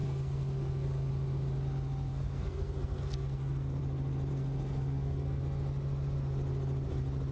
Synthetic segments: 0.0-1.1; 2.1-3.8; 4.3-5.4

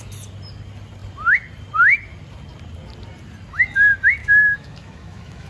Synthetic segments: 4.2-5.5